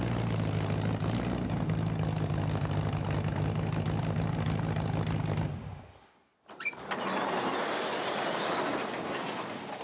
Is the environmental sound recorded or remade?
recorded